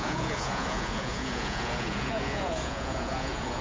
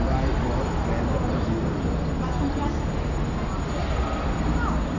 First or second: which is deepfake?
first